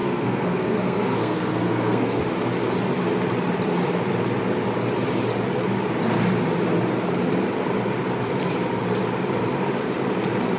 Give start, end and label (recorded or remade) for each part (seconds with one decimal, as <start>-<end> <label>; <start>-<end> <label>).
0.0-2.2 remade; 2.2-10.6 recorded